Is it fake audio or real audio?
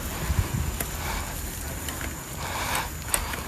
real